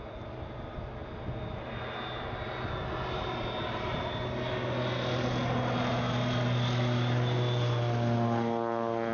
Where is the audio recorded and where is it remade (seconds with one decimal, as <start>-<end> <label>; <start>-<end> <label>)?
0.0-9.1 recorded